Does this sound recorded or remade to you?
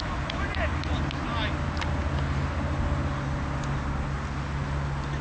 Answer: recorded